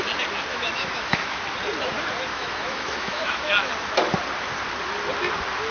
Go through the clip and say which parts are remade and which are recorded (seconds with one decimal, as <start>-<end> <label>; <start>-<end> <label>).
0.0-0.5 recorded; 0.5-1.4 remade; 1.4-2.3 recorded; 2.3-3.7 remade; 3.7-5.7 recorded